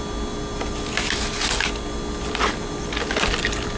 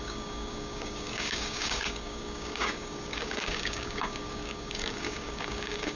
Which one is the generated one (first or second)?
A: second